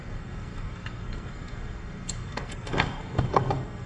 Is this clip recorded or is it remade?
remade